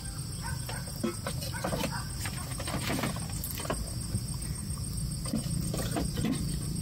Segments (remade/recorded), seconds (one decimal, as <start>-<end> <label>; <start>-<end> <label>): 0.0-6.8 recorded